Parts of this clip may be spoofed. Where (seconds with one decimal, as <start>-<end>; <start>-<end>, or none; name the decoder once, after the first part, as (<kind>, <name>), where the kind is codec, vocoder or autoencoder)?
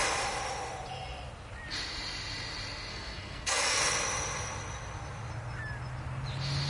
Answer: 2.9-3.8 (codec, SNAC)